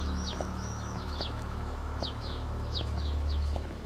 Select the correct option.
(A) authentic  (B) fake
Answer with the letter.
B